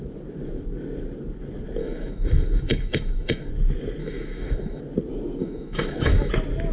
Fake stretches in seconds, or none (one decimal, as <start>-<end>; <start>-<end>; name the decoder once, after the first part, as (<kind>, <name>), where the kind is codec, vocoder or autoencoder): 1.8-3.5 (autoencoder, DAC-VAE); 4.0-4.8; 5.4-6.3